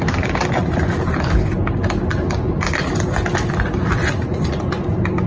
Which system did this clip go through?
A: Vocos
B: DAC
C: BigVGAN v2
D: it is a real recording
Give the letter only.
D